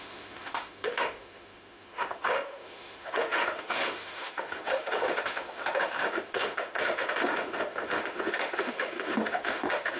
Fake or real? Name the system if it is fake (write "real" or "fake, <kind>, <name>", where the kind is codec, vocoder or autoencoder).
fake, autoencoder, DAC-VAE